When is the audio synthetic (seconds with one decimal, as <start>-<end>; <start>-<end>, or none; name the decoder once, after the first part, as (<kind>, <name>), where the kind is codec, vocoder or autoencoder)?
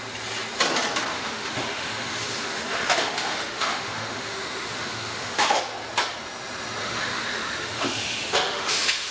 1.1-5.6 (autoencoder, DAC-VAE); 6.8-9.1